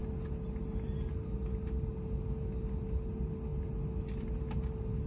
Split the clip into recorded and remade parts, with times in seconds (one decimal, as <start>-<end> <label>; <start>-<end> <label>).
0.0-5.1 recorded